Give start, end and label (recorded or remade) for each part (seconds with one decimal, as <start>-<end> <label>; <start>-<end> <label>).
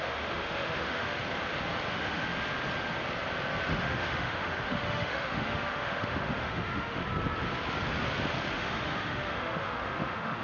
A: 0.0-1.2 remade; 1.2-1.9 recorded; 1.9-2.3 remade; 2.3-3.7 recorded; 3.7-7.0 remade; 7.0-8.5 recorded; 8.5-10.4 remade